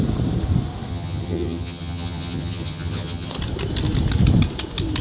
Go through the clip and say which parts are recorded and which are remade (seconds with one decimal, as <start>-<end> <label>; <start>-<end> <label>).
0.0-0.9 recorded; 0.9-3.3 remade; 3.3-5.0 recorded